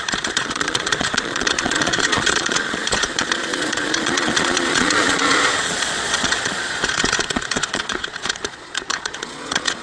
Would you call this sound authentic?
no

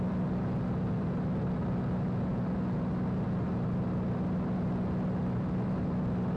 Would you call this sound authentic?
yes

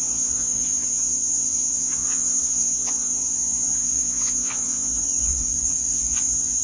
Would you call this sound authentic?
no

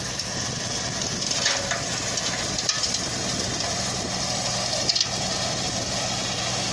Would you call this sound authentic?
yes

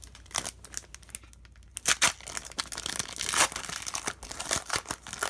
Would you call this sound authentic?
yes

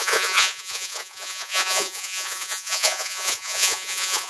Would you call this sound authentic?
no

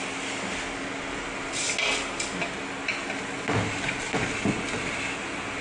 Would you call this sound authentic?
yes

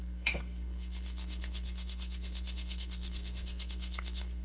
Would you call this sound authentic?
no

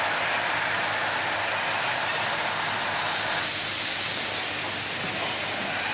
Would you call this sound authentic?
yes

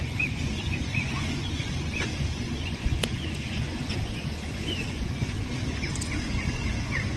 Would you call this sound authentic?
no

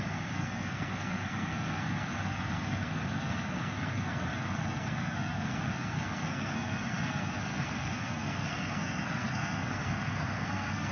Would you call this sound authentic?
no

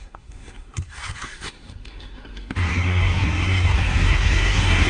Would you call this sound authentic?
no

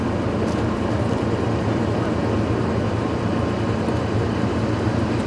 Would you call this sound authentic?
yes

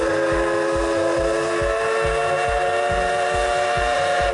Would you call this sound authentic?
yes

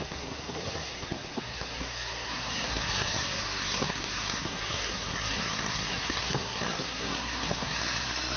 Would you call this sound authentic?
no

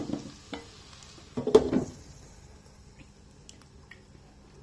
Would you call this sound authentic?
yes